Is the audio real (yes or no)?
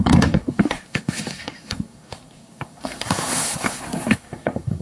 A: no